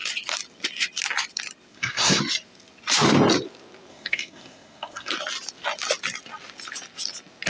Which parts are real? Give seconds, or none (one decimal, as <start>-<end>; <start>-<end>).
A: 0.0-1.7; 2.2-3.9; 5.1-7.5